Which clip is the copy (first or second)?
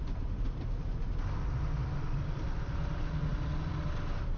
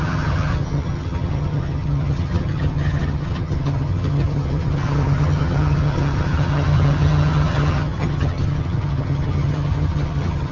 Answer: second